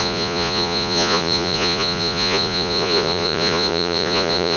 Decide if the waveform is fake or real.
fake